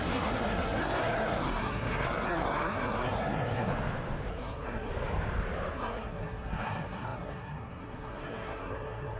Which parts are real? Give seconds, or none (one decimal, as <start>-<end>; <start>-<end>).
3.7-4.3; 4.9-5.7